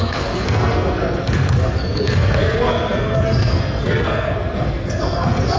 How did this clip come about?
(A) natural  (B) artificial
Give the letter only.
B